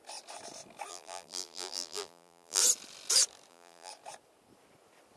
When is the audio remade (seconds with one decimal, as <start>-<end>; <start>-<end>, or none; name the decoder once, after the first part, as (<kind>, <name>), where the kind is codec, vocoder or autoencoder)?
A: 0.9-2.6 (vocoder, BigVGAN v2); 3.5-3.9